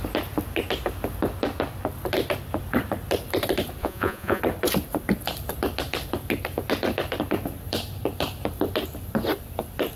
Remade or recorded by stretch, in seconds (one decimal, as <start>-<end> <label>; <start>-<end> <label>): 0.0-3.8 recorded; 3.8-4.4 remade; 4.4-10.0 recorded